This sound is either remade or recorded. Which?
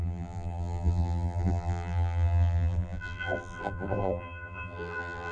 remade